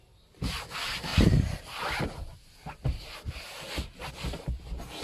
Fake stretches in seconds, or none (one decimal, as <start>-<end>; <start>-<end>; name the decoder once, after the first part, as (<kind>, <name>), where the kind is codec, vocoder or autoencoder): none